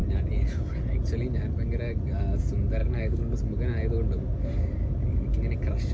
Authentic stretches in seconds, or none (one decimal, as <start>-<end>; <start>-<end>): 0.0-2.8; 3.4-5.9